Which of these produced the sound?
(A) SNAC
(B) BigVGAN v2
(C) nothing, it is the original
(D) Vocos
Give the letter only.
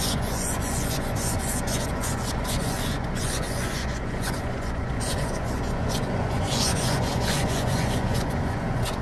D